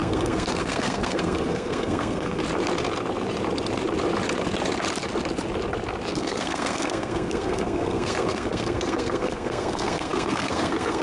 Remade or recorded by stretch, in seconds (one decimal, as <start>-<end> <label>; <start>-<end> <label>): 0.0-2.4 remade; 2.4-6.1 recorded; 6.1-11.0 remade